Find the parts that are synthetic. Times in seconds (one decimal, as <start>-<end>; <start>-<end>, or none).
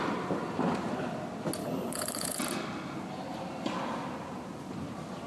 1.6-2.4